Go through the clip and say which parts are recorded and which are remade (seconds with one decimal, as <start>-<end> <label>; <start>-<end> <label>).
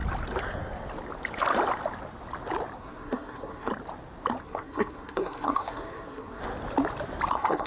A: 0.0-2.8 recorded; 2.8-3.7 remade; 3.7-4.4 recorded; 4.4-6.4 remade; 6.4-7.3 recorded; 7.3-7.7 remade